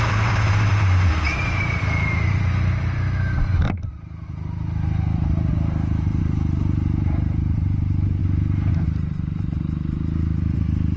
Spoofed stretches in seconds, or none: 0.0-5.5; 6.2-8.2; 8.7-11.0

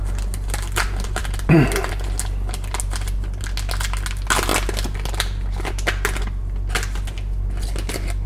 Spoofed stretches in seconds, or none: none

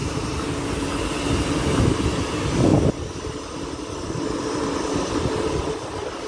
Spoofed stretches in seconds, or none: none

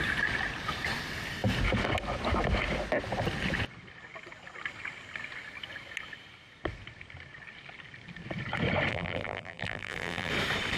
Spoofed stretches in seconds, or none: 8.9-10.3

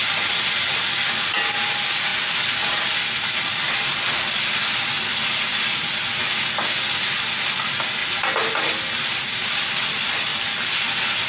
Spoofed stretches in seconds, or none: 5.1-6.4; 8.0-8.5

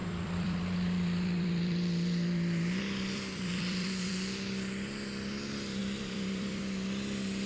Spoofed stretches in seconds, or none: 0.0-4.1; 5.8-6.6